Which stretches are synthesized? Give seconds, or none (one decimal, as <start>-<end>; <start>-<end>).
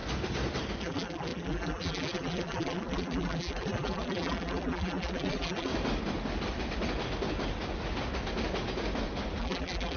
0.8-5.7; 9.4-10.0